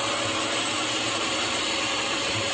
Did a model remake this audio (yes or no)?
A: yes